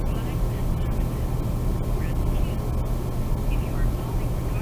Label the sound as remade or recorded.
recorded